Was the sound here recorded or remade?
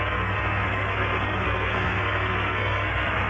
remade